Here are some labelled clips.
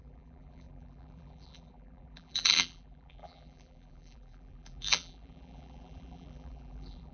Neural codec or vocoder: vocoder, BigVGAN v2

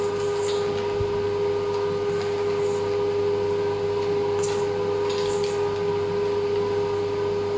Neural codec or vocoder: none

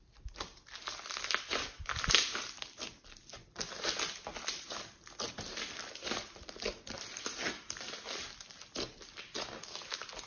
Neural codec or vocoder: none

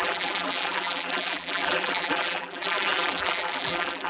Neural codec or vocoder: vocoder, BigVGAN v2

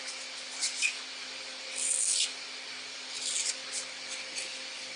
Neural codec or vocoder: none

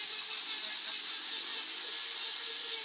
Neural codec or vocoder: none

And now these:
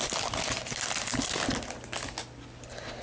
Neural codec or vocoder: none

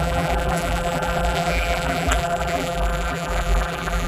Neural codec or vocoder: vocoder, BigVGAN v2